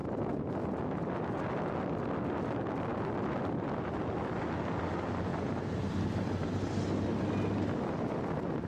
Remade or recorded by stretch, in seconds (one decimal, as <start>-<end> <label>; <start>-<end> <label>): 0.0-8.7 recorded